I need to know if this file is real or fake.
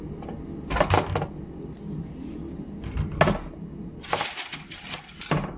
real